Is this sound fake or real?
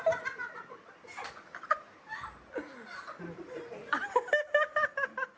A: real